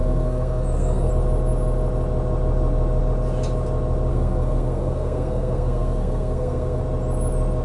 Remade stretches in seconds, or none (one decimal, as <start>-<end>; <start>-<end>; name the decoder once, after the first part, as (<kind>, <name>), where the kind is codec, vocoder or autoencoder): 0.0-1.1 (codec, SNAC); 4.1-6.8